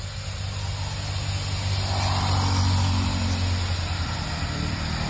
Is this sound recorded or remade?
recorded